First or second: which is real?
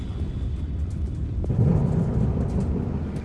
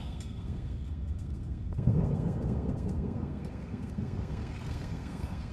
first